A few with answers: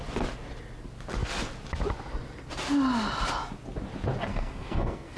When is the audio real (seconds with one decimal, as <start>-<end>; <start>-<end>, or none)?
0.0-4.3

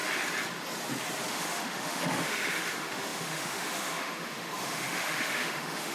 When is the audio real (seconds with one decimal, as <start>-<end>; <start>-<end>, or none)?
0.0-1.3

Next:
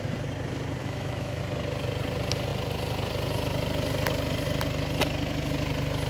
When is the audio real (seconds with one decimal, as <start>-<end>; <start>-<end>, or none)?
0.0-0.8; 1.4-6.1

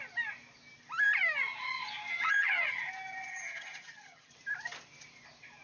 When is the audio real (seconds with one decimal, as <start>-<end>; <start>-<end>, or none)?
0.0-2.1; 2.9-3.3; 4.3-5.6

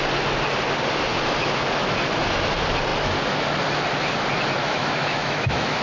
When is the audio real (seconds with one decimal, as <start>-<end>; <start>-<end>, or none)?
0.0-4.6

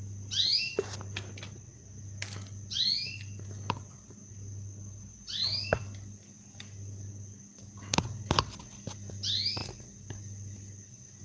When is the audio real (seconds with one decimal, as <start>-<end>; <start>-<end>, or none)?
0.0-11.2

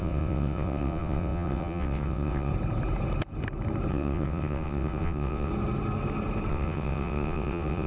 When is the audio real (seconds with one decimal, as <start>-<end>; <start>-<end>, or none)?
2.5-3.9; 5.5-6.5